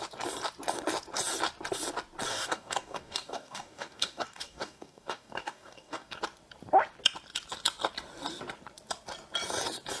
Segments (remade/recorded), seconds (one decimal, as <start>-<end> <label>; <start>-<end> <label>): 0.0-2.3 recorded; 2.3-6.2 remade; 6.2-10.0 recorded